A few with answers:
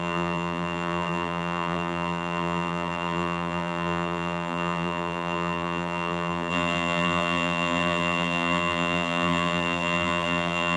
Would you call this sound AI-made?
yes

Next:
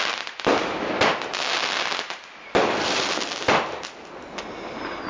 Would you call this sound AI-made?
no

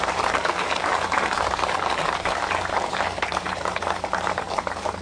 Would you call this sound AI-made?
yes